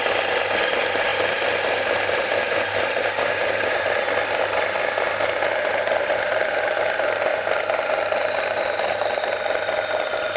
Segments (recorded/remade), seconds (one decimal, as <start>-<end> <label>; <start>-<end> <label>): 0.0-10.4 recorded